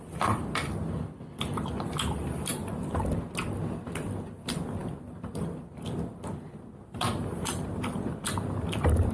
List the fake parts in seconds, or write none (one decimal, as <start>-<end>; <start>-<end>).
0.0-2.5; 3.6-9.1